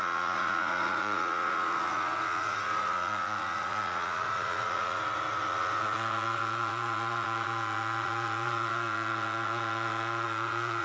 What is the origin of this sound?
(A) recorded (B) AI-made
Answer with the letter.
B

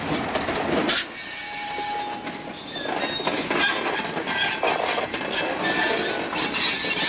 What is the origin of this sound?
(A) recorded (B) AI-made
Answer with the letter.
A